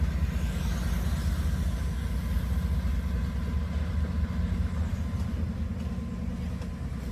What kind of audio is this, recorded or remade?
recorded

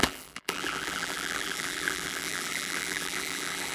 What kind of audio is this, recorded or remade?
remade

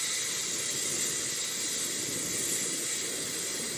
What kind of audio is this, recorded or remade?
recorded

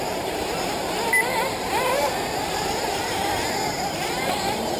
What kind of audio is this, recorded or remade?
remade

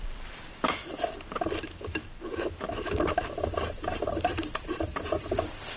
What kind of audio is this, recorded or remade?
remade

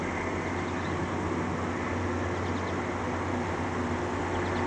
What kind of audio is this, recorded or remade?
recorded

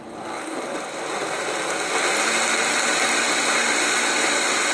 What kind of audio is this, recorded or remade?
recorded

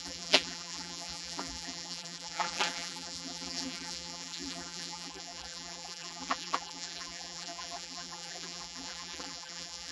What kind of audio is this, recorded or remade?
remade